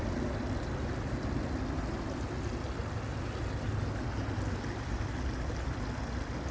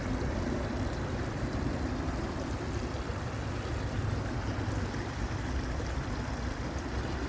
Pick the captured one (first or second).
first